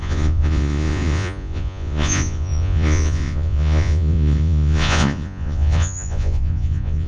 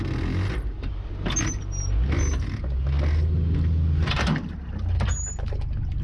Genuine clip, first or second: second